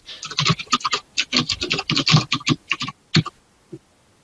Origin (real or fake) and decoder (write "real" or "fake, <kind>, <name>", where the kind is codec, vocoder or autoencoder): real